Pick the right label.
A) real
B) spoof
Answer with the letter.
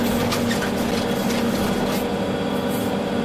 A